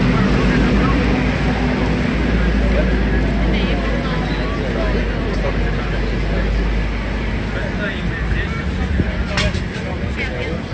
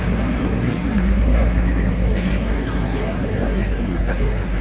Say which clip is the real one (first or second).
first